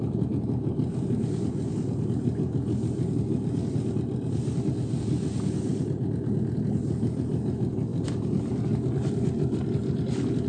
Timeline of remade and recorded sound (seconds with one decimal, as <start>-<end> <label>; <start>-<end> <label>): 0.0-10.5 recorded